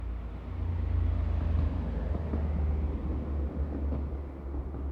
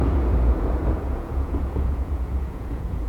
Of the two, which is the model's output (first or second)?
second